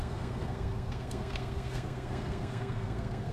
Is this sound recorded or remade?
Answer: remade